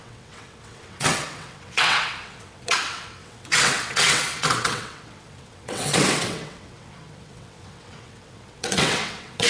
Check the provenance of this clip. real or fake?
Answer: fake